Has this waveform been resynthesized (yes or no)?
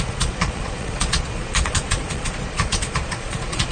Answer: yes